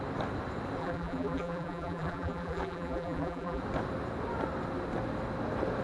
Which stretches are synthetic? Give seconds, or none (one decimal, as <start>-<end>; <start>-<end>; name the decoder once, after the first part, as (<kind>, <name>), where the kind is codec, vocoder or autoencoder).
0.8-3.6 (vocoder, BigVGAN v2)